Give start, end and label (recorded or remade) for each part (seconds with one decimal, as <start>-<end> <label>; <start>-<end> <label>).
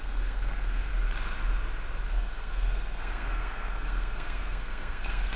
0.0-0.9 remade; 0.9-2.1 recorded; 2.1-5.4 remade